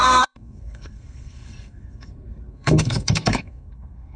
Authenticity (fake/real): fake